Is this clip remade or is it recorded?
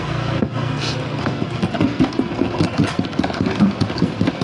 remade